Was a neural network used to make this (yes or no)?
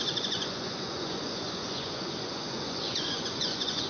yes